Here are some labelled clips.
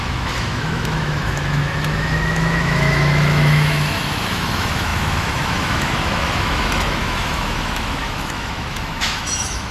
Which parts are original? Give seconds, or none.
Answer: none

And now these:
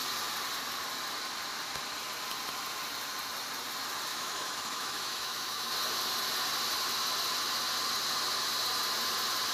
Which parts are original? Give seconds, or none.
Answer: 0.0-4.1; 5.7-9.5

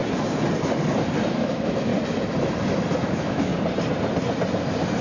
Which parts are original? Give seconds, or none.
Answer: 0.0-1.3; 1.9-3.1; 3.5-5.0

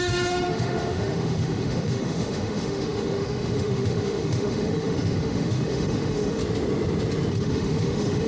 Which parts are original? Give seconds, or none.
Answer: 6.4-7.3

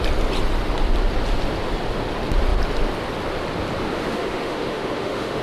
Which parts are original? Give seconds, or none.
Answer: 0.0-3.8